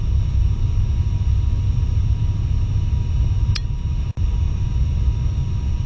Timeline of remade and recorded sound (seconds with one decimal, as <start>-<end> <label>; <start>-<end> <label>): 0.0-5.9 recorded